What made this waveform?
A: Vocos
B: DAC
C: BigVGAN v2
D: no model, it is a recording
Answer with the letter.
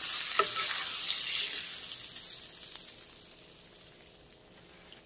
D